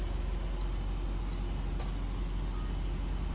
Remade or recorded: recorded